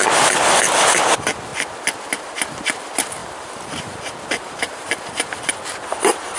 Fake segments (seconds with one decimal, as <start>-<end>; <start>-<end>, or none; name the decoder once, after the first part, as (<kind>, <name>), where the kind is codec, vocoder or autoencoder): 3.2-5.5 (vocoder, BigVGAN v2)